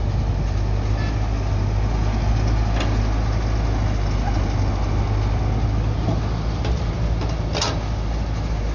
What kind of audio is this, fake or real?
real